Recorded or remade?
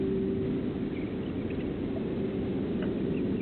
recorded